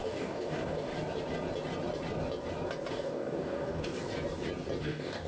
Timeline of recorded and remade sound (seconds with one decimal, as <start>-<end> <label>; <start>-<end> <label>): 0.0-0.9 remade; 0.9-2.9 recorded; 2.9-3.9 remade; 3.9-4.8 recorded; 4.8-5.3 remade